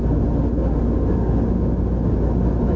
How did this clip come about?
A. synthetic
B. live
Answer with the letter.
B